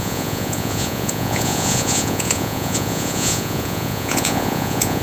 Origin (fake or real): fake